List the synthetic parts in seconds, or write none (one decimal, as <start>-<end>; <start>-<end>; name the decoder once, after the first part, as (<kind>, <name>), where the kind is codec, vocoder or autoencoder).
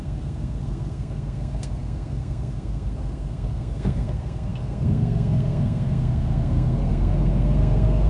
0.0-8.1 (codec, SNAC)